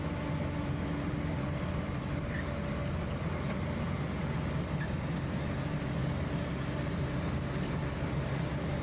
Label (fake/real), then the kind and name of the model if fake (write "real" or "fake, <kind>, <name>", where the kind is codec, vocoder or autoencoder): real